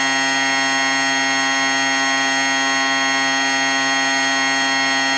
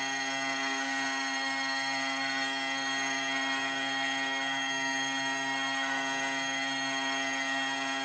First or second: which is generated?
second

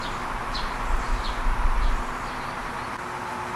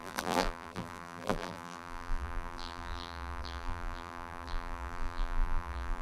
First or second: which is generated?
second